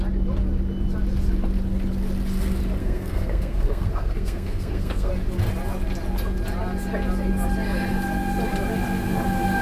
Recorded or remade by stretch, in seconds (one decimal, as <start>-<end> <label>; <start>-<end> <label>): 0.0-2.8 recorded; 2.8-5.1 remade; 5.1-9.6 recorded